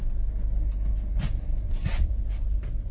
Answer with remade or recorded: recorded